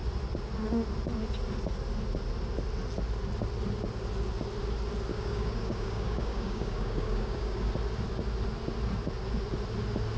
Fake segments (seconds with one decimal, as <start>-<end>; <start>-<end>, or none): 5.1-7.7